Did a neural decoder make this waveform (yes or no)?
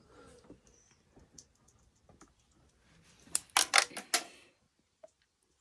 no